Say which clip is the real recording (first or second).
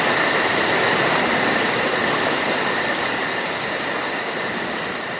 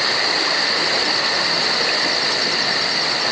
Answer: second